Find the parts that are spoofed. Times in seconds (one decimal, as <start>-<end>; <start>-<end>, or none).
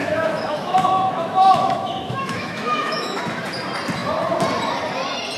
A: 0.0-3.2